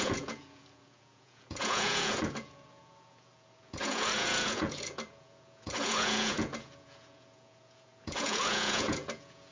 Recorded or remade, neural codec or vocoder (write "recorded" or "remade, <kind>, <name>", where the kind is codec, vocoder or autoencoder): remade, vocoder, Vocos